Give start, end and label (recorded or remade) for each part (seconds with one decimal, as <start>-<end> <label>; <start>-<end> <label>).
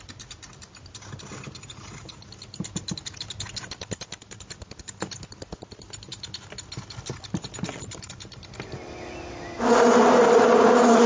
0.0-11.1 recorded